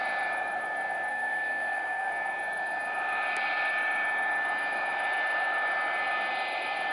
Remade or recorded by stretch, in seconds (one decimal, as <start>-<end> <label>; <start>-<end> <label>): 0.0-1.1 recorded; 1.1-2.1 remade; 2.1-6.9 recorded